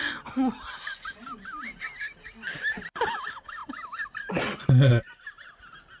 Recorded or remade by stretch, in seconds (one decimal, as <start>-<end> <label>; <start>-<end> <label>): 0.0-6.0 recorded